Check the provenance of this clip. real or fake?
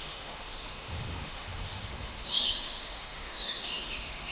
fake